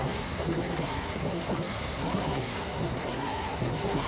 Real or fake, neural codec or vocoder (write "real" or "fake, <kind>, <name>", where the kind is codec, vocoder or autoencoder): fake, codec, SNAC